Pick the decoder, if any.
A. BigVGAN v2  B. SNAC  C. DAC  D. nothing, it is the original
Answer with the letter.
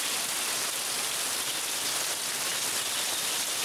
D